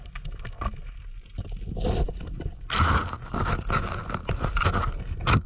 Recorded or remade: recorded